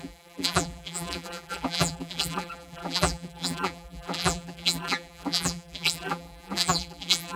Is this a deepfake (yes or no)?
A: yes